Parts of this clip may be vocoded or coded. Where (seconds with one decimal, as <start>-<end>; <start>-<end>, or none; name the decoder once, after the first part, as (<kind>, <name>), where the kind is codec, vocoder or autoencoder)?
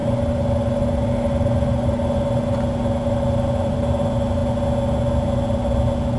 0.0-3.7 (vocoder, BigVGAN v2)